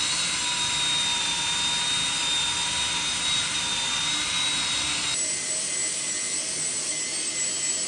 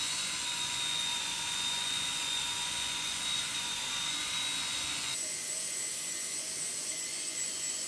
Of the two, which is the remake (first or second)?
second